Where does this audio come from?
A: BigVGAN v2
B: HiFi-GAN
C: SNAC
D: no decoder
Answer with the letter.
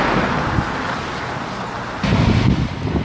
D